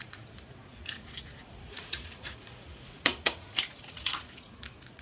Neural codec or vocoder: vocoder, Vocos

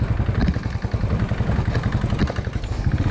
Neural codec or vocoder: none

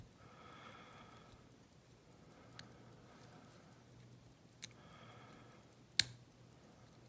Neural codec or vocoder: none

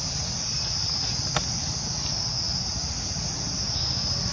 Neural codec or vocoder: none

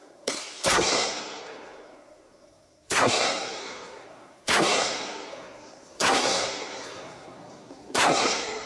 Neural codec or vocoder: codec, SNAC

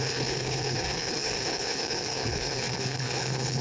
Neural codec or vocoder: codec, HILCodec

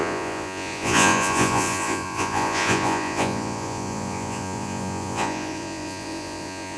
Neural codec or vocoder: vocoder, Vocos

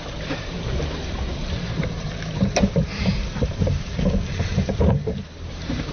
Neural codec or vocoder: vocoder, BigVGAN v2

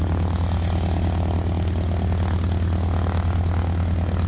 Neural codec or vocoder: none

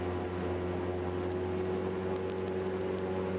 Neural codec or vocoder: none